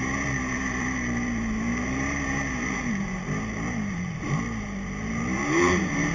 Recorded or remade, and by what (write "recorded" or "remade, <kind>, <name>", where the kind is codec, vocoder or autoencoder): remade, vocoder, BigVGAN v2